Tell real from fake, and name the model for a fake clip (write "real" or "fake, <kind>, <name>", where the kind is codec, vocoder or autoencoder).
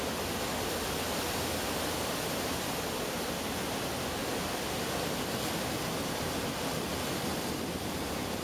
real